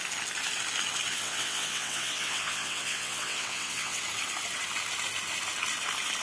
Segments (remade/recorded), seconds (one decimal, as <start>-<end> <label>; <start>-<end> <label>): 0.0-1.1 recorded; 1.1-4.0 remade; 4.0-6.2 recorded